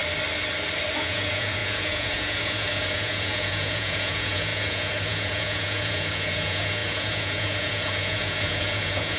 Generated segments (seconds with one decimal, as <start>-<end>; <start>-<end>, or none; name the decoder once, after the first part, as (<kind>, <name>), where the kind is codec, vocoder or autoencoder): 1.0-9.2 (vocoder, Vocos)